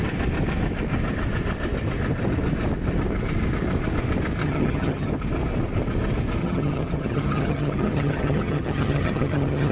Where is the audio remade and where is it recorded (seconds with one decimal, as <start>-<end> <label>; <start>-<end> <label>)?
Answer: 0.0-4.4 recorded; 4.4-5.1 remade; 5.1-6.4 recorded; 6.4-9.7 remade